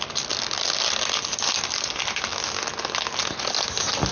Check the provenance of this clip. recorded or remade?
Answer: recorded